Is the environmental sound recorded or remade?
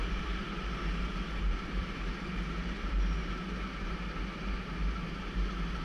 remade